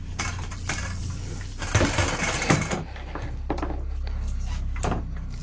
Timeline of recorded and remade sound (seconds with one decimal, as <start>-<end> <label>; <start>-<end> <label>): 0.0-5.4 recorded